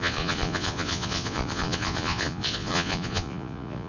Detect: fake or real fake